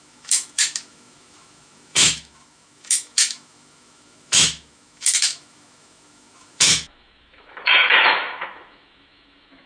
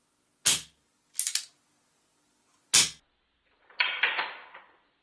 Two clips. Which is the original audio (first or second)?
second